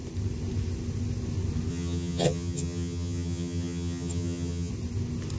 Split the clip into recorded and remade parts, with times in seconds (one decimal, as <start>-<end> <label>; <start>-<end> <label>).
0.0-1.7 recorded; 1.7-4.7 remade; 4.7-5.4 recorded